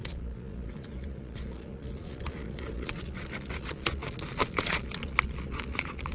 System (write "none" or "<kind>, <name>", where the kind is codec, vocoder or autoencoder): vocoder, Vocos